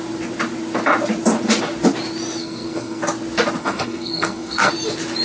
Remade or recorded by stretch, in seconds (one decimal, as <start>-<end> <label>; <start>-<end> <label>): 0.0-2.4 recorded; 2.4-3.0 remade; 3.0-3.6 recorded; 3.6-4.7 remade; 4.7-5.2 recorded